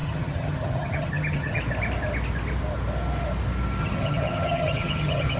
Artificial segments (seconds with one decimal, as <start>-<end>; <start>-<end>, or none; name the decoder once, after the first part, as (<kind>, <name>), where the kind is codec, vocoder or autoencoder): 0.0-1.6 (vocoder, HiFi-GAN); 3.8-5.4